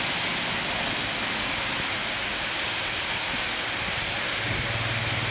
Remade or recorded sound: recorded